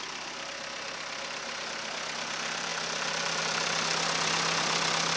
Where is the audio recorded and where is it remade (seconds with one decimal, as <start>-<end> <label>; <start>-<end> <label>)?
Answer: 0.0-5.2 recorded